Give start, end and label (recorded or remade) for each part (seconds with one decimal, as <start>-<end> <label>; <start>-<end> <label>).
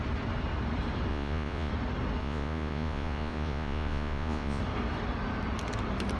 0.0-1.1 recorded; 1.1-1.7 remade; 1.7-2.2 recorded; 2.2-4.6 remade; 4.6-6.2 recorded